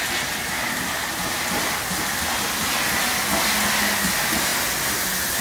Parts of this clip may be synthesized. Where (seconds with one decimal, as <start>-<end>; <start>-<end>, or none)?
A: none